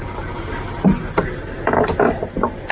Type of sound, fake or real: real